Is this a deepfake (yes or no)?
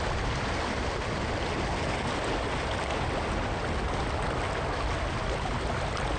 no